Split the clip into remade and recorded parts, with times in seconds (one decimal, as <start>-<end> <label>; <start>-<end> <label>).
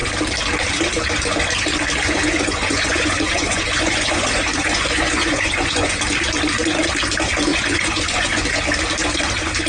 0.0-2.0 recorded; 2.0-6.0 remade; 6.0-7.5 recorded; 7.5-8.5 remade; 8.5-9.7 recorded